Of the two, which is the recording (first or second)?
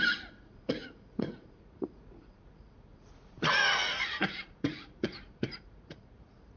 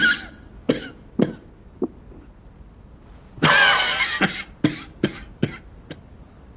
second